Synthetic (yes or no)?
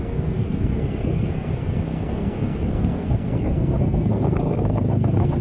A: yes